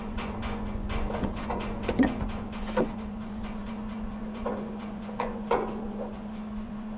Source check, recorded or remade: remade